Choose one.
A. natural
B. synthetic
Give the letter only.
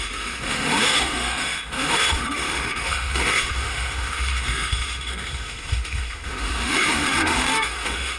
B